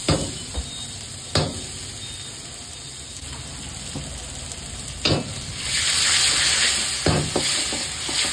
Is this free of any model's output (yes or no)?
yes